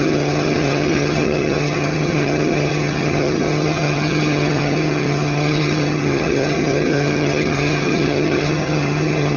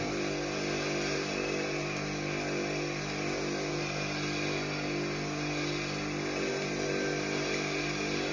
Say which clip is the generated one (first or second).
first